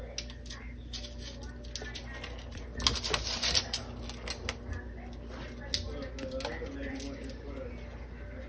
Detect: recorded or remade recorded